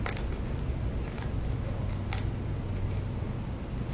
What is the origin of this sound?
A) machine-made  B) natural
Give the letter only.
B